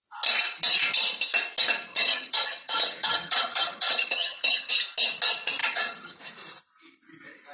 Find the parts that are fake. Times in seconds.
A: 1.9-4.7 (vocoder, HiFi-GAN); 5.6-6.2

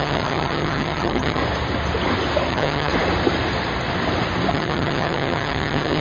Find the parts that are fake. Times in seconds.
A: 0.0-1.4 (vocoder, HiFi-GAN); 2.5-2.9; 4.5-6.0

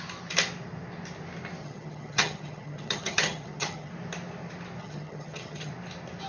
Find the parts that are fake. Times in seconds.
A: 1.6-3.9 (vocoder, HiFi-GAN); 4.8-5.7

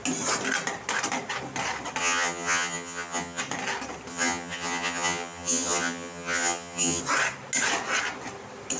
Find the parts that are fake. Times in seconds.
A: 2.0-3.4 (vocoder, HiFi-GAN); 4.1-7.0

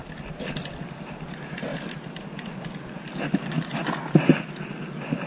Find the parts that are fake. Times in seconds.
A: none

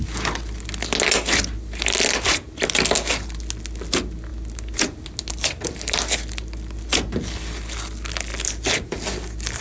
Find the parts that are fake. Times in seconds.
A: none

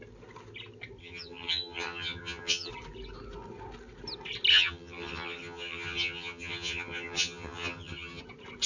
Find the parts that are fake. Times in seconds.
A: 1.0-2.7 (vocoder, HiFi-GAN); 4.5-8.2

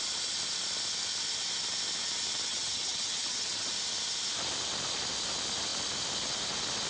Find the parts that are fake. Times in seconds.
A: 2.5-3.7 (vocoder, HiFi-GAN)